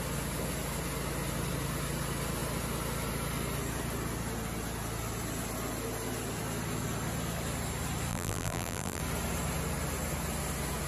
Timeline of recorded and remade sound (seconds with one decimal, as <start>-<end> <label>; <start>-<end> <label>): 0.0-8.1 recorded; 8.1-9.0 remade; 9.0-10.9 recorded